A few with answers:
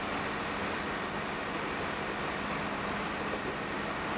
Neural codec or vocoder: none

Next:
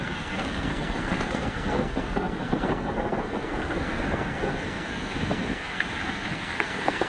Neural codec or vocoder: codec, SNAC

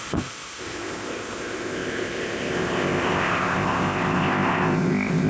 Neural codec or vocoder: codec, ZipCodec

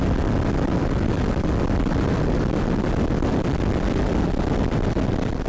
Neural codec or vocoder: none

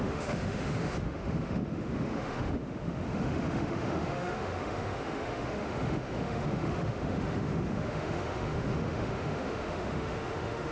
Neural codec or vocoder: autoencoder, DAC-VAE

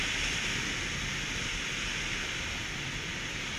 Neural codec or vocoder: none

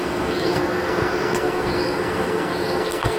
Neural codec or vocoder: codec, SNAC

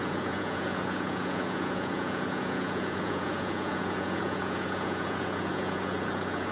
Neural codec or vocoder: vocoder, Vocos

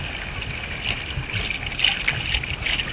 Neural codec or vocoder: none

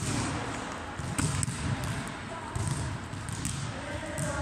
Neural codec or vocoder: none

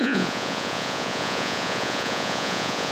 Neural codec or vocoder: vocoder, Vocos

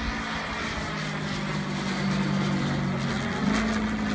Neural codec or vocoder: none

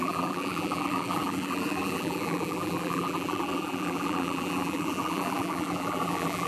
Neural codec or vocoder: vocoder, BigVGAN v2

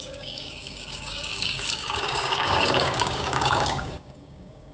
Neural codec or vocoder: codec, DAC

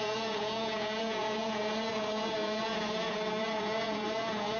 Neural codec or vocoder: vocoder, Vocos